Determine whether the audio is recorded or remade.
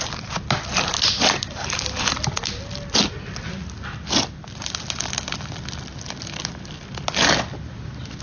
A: recorded